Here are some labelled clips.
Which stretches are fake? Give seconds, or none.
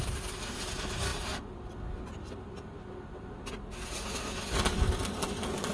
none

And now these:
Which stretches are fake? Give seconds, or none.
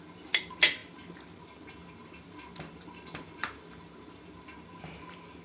none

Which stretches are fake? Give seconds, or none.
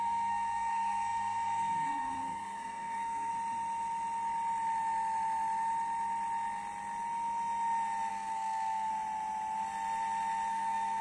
0.0-3.3 (codec, SNAC); 8.1-8.9; 10.5-11.0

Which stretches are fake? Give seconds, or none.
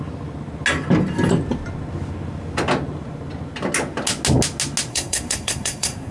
4.9-6.1 (codec, SNAC)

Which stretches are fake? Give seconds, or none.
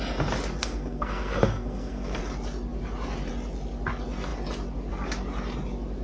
0.6-2.2 (codec, SNAC)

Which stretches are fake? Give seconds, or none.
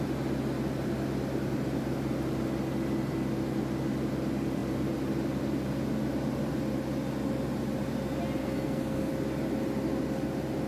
8.4-9.1 (codec, SNAC)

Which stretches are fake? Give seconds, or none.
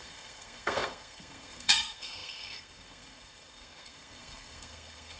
0.0-5.2 (codec, SNAC)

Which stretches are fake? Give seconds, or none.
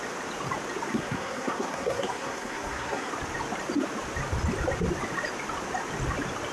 0.9-3.1 (codec, SNAC)